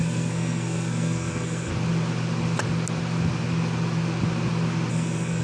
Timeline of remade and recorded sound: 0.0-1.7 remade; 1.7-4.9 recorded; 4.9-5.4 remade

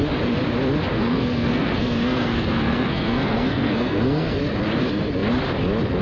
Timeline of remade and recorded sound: 0.0-0.9 recorded; 0.9-4.4 remade; 4.4-6.0 recorded

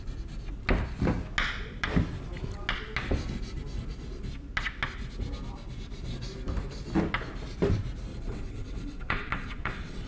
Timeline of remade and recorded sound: 0.0-8.1 recorded; 8.1-10.1 remade

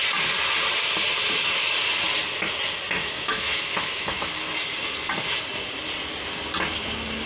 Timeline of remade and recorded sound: 0.0-3.0 recorded; 3.0-4.3 remade; 4.3-7.3 recorded

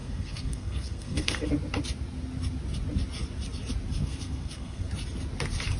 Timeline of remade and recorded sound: 0.0-1.5 remade; 1.5-4.0 recorded; 4.0-4.9 remade; 4.9-5.8 recorded

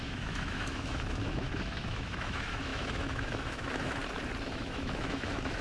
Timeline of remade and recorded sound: 0.0-4.0 remade; 4.0-4.5 recorded; 4.5-5.6 remade

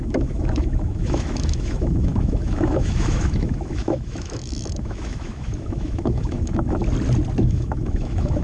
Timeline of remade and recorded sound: 0.0-6.8 remade; 6.8-7.4 recorded; 7.4-8.4 remade

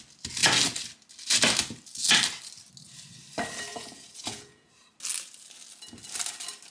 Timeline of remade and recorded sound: 0.0-3.7 recorded; 3.7-4.7 remade; 4.7-6.7 recorded